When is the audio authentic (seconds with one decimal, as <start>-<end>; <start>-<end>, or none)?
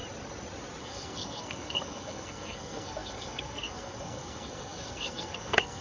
0.0-0.8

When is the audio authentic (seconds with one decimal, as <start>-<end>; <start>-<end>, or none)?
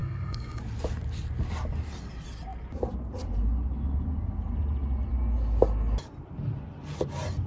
0.6-7.5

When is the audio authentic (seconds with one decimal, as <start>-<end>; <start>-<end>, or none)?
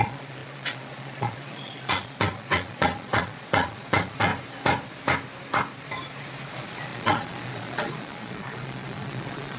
4.3-6.5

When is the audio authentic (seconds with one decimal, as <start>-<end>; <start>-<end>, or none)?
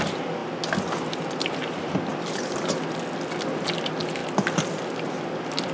0.0-2.1; 3.3-4.2; 5.3-5.7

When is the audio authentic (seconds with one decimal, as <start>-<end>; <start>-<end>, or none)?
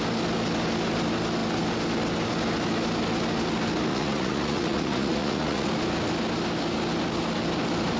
0.0-3.9; 5.7-8.0